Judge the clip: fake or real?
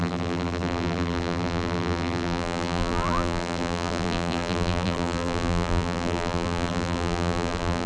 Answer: fake